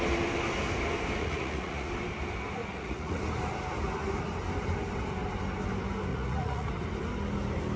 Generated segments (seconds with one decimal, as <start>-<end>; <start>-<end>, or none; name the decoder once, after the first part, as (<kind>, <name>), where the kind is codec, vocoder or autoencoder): 1.2-1.9 (vocoder, Vocos); 2.6-3.2; 6.1-6.7